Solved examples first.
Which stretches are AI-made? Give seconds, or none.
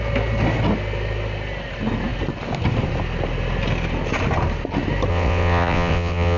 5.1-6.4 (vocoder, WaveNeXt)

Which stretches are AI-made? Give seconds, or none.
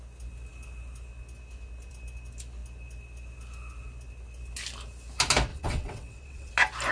5.5-6.5 (vocoder, WaveNeXt)